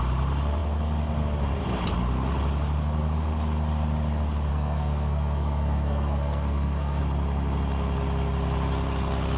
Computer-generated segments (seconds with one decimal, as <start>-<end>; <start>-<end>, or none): 4.5-7.0